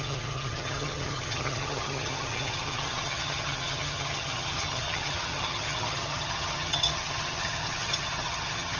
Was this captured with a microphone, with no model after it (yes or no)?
no